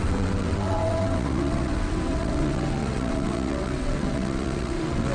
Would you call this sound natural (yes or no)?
no